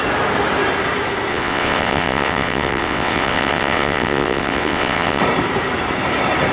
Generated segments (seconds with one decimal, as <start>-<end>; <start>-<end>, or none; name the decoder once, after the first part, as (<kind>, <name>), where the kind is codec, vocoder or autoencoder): 1.3-5.2 (vocoder, WaveNeXt)

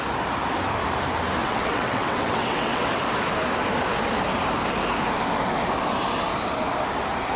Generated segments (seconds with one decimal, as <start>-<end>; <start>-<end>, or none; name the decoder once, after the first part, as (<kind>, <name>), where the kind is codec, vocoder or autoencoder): 1.4-2.9 (vocoder, WaveNeXt)

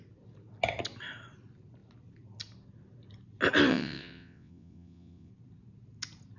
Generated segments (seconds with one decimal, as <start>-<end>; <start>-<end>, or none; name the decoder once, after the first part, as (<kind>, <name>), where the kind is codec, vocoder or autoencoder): 3.7-5.3 (vocoder, WaveNeXt)

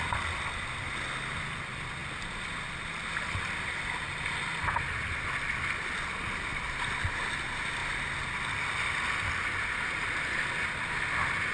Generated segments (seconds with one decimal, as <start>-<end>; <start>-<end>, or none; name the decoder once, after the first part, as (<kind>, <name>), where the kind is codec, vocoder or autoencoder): none

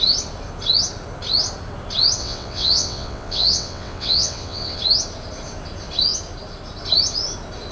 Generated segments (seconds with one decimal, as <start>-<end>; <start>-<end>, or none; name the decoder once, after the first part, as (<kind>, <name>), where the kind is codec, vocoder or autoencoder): 2.2-4.8 (vocoder, WaveNeXt)